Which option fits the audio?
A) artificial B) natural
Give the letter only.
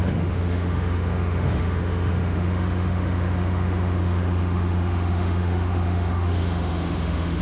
A